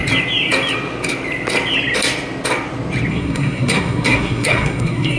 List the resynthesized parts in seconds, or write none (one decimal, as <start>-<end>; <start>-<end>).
3.1-5.2